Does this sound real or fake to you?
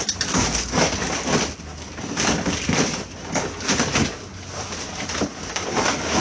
real